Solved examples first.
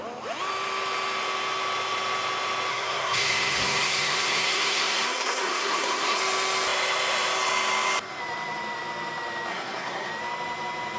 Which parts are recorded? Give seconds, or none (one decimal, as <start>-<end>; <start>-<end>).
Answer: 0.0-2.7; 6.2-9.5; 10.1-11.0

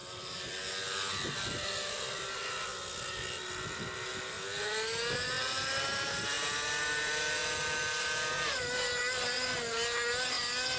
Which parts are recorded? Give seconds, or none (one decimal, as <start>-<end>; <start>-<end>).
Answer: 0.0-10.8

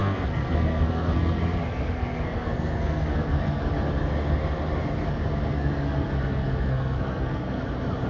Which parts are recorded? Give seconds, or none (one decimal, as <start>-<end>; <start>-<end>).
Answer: 3.6-5.5; 7.6-8.1

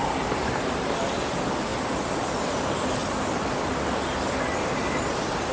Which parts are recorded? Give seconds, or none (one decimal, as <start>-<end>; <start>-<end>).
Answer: 0.0-5.5

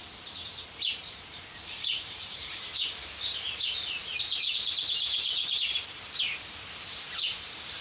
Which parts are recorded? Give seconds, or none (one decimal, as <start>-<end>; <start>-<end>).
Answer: none

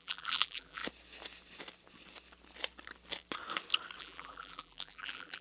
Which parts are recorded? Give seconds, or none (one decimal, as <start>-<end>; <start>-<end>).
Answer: 0.8-4.0